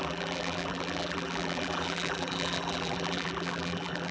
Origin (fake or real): fake